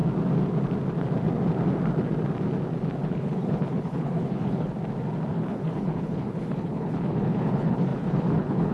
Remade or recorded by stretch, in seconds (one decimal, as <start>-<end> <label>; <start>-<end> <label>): 0.0-3.0 recorded; 3.0-4.7 remade; 4.7-5.3 recorded; 5.3-8.7 remade

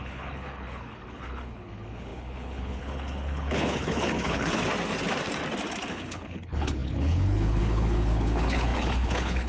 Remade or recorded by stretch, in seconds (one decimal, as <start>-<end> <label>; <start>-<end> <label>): 0.0-4.6 remade; 4.6-5.9 recorded; 5.9-9.5 remade